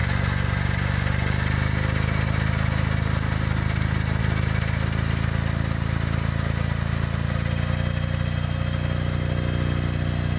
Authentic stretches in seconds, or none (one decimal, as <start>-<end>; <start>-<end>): 0.0-10.4